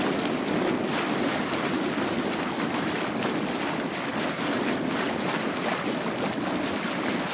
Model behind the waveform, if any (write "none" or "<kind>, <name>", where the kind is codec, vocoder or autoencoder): none